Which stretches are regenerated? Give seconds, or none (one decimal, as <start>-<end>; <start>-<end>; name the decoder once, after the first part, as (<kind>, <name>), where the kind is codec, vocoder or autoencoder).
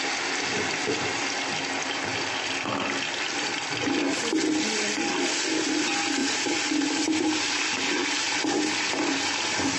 6.2-8.3 (vocoder, BigVGAN v2)